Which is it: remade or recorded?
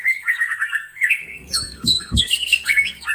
remade